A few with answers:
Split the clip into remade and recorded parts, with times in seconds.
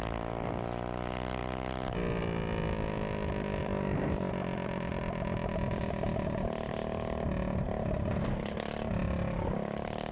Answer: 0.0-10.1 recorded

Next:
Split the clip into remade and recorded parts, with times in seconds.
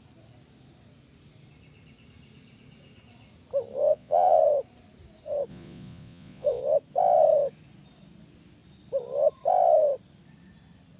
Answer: 0.0-3.8 recorded; 3.8-4.4 remade; 4.4-5.5 recorded; 5.5-6.6 remade; 6.6-11.0 recorded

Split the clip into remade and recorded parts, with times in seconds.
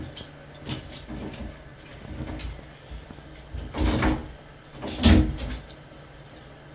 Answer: 0.0-6.7 recorded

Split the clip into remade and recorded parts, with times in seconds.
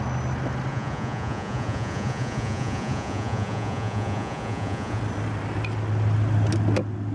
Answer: 0.0-0.7 recorded; 0.7-5.0 remade; 5.0-7.1 recorded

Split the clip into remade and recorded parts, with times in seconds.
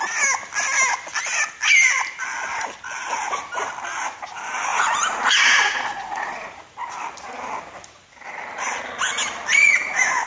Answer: 0.0-4.7 recorded; 4.7-6.5 remade; 6.5-9.5 recorded; 9.5-10.3 remade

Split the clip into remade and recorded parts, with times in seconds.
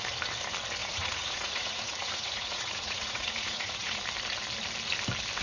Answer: 0.0-0.8 recorded; 0.8-4.0 remade; 4.0-5.4 recorded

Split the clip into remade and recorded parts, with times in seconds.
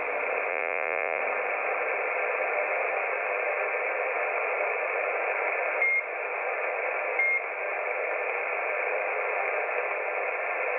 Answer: 0.0-0.5 recorded; 0.5-1.2 remade; 1.2-10.8 recorded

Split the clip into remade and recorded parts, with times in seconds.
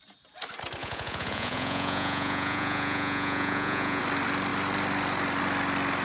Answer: 0.0-0.8 recorded; 0.8-4.0 remade; 4.0-6.0 recorded